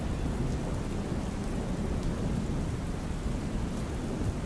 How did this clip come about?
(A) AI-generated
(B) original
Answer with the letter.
B